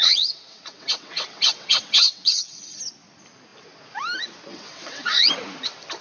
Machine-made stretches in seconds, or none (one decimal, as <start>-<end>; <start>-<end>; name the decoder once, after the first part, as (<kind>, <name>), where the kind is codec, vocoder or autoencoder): 0.0-2.8 (vocoder, WaveNeXt); 4.5-5.3